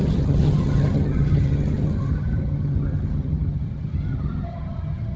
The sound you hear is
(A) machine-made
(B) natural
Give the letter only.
A